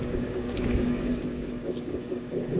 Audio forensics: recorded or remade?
remade